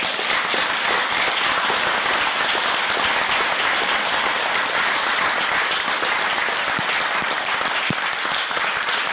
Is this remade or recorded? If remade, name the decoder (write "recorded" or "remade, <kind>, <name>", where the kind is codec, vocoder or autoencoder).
recorded